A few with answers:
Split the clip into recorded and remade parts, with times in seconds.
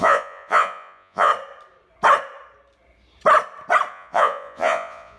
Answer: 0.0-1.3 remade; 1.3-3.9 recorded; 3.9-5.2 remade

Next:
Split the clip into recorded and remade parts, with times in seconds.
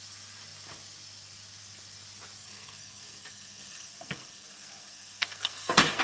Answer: 0.0-2.4 recorded; 2.4-6.0 remade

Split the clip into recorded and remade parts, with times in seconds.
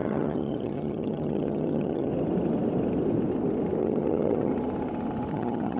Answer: 0.0-2.1 remade; 2.1-3.8 recorded; 3.8-4.5 remade; 4.5-5.3 recorded; 5.3-5.8 remade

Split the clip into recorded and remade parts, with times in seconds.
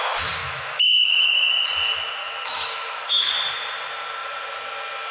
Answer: 0.0-0.4 recorded; 0.4-1.5 remade; 1.5-2.2 recorded; 2.2-3.3 remade; 3.3-5.1 recorded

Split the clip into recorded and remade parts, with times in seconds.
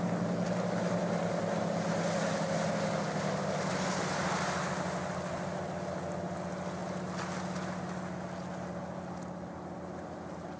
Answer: 0.0-10.6 recorded